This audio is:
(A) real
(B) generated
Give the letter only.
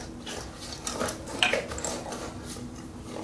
A